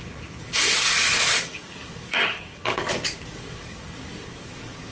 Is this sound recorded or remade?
remade